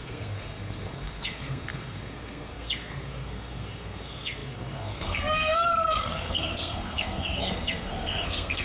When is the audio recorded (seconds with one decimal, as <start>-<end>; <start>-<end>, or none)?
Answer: none